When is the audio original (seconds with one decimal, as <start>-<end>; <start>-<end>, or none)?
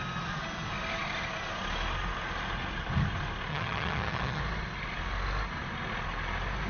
0.0-3.5; 4.4-6.7